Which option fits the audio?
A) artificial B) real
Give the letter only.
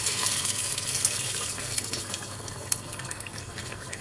A